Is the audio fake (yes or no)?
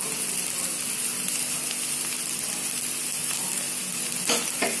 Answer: no